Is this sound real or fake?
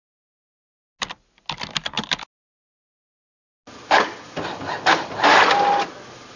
real